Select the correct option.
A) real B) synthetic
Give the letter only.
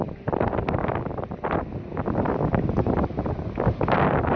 A